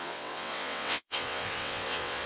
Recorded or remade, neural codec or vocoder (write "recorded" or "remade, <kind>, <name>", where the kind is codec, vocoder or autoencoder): remade, vocoder, WaveNeXt